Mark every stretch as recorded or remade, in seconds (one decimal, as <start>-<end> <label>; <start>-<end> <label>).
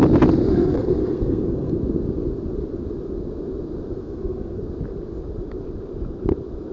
0.0-0.5 recorded; 0.5-1.7 remade; 1.7-4.0 recorded; 4.0-4.6 remade; 4.6-6.7 recorded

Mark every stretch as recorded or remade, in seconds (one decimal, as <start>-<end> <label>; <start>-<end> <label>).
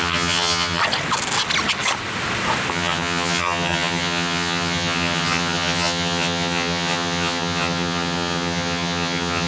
0.0-0.8 remade; 0.8-2.7 recorded; 2.7-9.5 remade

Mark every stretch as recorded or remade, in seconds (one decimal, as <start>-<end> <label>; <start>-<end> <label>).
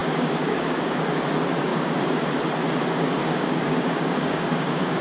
0.0-1.0 remade; 1.0-1.7 recorded; 1.7-2.3 remade; 2.3-3.2 recorded; 3.2-5.0 remade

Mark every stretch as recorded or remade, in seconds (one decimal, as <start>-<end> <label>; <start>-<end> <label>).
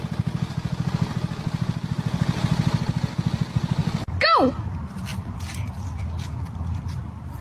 0.0-7.4 recorded